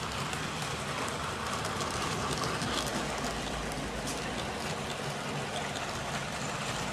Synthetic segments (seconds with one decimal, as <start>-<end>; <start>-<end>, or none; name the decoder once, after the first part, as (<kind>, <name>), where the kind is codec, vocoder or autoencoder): none

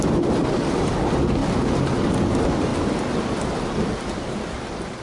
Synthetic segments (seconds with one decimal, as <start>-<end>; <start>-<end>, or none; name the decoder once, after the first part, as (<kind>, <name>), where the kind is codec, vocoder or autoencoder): none

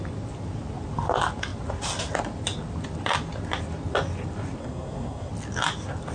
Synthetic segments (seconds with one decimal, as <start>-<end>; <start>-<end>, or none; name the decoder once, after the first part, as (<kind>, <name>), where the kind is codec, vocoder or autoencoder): 4.6-5.3 (codec, SNAC)

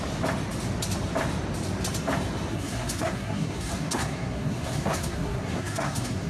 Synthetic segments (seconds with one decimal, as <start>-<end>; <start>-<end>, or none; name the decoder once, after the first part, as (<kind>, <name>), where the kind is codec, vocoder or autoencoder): 2.5-6.3 (codec, SNAC)

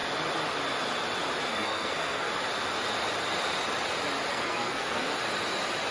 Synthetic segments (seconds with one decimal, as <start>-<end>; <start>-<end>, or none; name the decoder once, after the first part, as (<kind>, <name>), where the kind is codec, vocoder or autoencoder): 1.5-2.3 (codec, SNAC); 4.3-5.1

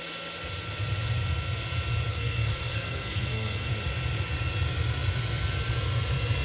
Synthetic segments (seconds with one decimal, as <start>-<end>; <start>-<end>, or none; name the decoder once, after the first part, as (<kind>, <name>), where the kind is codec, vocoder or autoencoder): 2.1-3.7 (codec, SNAC)